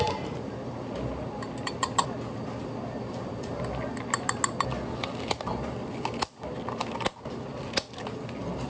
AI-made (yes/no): no